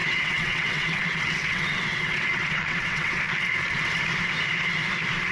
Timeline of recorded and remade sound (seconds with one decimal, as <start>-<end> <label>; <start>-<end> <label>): 0.0-3.2 remade; 3.2-5.3 recorded